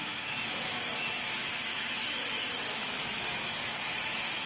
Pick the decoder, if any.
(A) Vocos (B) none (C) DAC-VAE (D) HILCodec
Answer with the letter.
C